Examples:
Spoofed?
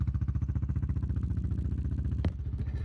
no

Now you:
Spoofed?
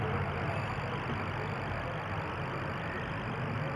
no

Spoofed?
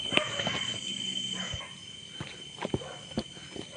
no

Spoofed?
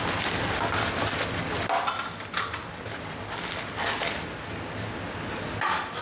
no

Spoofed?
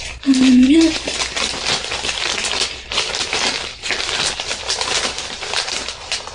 no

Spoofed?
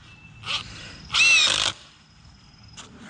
no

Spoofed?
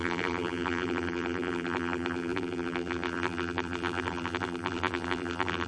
yes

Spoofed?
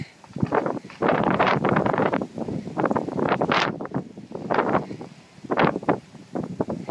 yes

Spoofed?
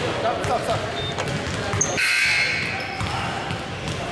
no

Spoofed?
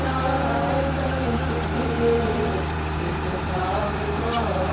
yes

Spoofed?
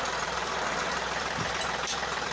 yes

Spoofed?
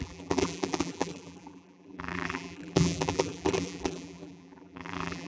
yes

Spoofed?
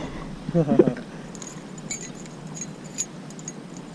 no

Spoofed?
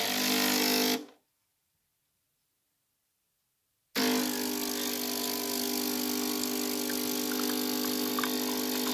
no